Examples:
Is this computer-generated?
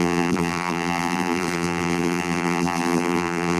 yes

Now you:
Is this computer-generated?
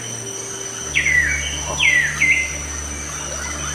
no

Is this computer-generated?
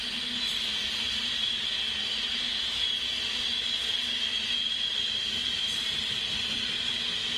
no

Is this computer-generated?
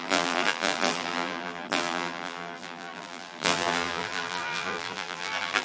yes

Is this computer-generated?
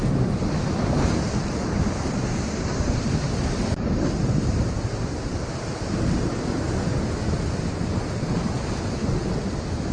no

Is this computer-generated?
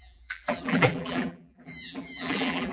yes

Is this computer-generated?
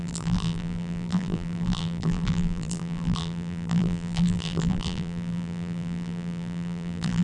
yes